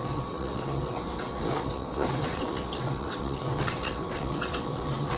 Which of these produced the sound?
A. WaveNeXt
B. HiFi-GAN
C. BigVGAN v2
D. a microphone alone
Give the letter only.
A